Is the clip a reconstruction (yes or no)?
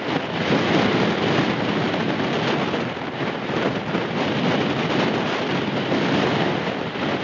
no